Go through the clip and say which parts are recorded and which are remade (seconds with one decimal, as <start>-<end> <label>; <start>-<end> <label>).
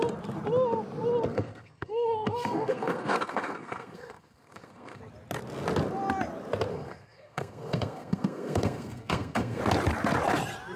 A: 0.0-1.3 recorded; 1.3-5.0 remade; 5.0-6.7 recorded; 6.7-9.6 remade; 9.6-10.8 recorded